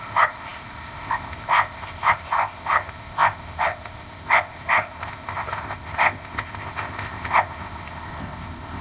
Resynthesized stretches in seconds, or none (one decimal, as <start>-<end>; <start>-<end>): 0.0-8.8